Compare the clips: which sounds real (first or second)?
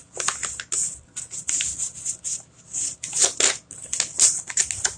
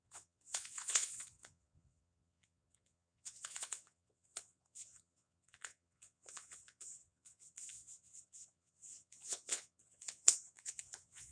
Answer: first